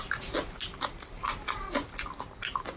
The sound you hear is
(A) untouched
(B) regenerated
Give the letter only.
A